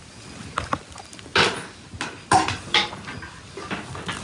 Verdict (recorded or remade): recorded